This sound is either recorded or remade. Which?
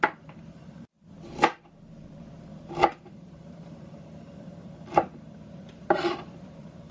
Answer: remade